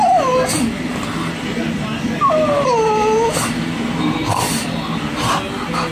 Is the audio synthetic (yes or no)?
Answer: no